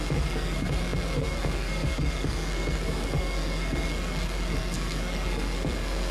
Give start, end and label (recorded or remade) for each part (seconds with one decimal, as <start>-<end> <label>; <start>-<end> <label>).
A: 0.0-6.1 remade